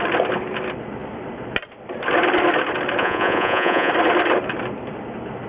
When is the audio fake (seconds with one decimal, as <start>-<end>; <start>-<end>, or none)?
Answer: 3.0-3.9